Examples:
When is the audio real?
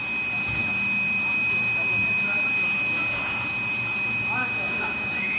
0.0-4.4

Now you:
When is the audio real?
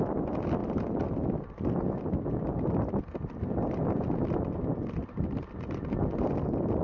0.0-6.8